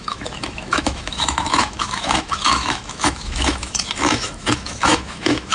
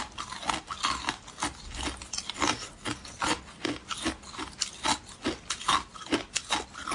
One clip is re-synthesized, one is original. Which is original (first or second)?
second